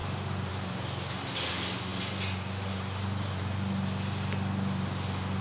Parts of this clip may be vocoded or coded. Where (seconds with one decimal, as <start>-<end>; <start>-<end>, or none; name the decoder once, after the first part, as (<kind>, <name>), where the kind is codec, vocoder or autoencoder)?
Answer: none